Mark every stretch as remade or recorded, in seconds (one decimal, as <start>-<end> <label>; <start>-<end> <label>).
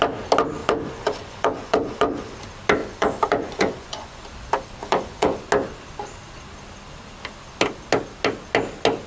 0.0-0.6 recorded; 0.6-2.4 remade; 2.4-2.8 recorded; 2.8-4.2 remade; 4.2-4.8 recorded; 4.8-5.4 remade; 5.4-9.1 recorded